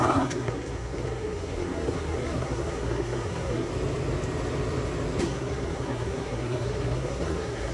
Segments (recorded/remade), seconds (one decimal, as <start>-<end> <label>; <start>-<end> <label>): 0.0-3.7 remade; 3.7-5.2 recorded; 5.2-7.7 remade